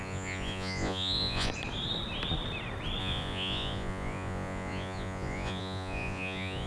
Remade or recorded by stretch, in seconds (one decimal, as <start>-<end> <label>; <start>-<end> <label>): 0.0-1.5 remade; 1.5-3.0 recorded; 3.0-6.7 remade